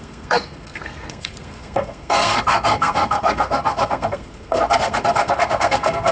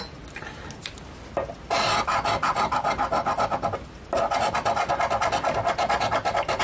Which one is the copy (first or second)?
first